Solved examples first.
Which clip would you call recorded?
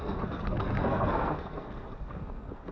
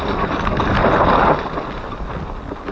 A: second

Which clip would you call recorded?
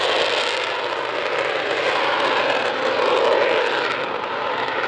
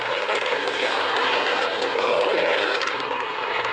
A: first